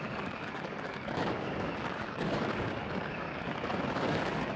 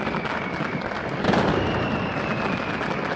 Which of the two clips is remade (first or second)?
first